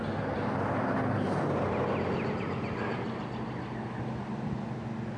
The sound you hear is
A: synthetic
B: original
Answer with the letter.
B